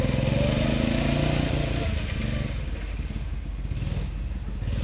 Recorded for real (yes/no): yes